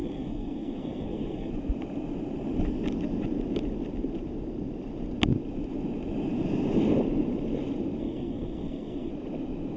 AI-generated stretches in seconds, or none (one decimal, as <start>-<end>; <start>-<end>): 0.0-1.5; 8.0-9.1